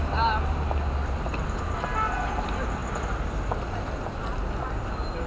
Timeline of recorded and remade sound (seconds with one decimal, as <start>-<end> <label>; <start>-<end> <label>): 0.0-5.3 recorded